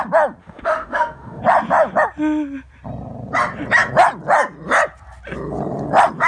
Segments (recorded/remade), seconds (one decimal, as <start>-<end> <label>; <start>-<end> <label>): 0.0-0.4 recorded; 0.4-1.4 remade; 1.4-6.3 recorded